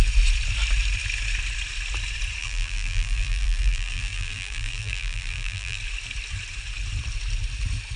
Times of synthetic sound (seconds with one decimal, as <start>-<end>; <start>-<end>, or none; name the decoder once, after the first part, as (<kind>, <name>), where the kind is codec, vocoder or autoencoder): 2.4-5.8 (vocoder, BigVGAN v2)